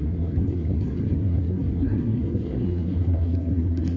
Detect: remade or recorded remade